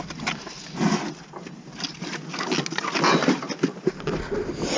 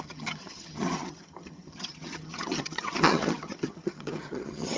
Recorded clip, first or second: first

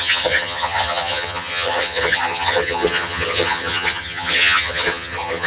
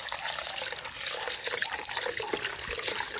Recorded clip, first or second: second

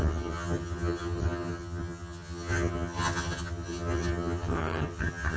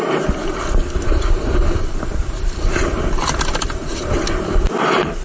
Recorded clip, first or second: second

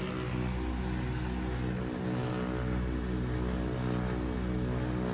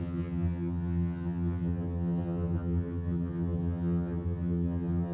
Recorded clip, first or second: first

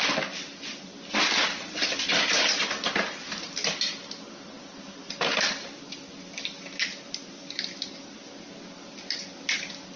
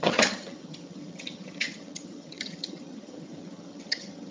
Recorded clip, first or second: first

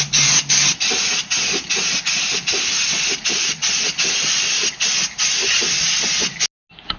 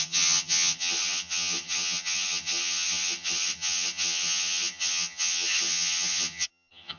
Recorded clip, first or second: first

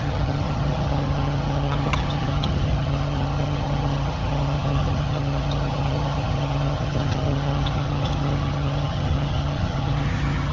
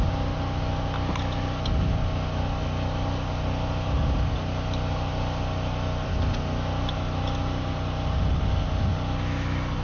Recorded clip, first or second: second